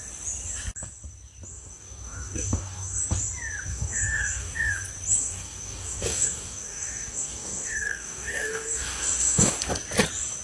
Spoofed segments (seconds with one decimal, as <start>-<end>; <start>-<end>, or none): 1.5-3.0; 3.7-4.7; 5.2-9.6